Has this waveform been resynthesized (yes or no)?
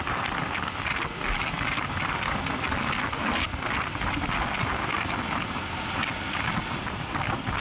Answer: no